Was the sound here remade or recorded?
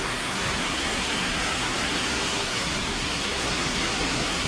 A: remade